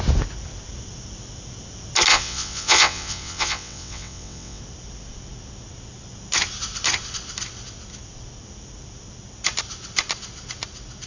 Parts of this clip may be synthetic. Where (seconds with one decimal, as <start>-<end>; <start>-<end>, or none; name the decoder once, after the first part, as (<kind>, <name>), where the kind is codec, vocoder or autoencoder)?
2.1-4.6 (vocoder, WaveNeXt)